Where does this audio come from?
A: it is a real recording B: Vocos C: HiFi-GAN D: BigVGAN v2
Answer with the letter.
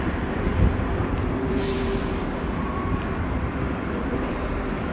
D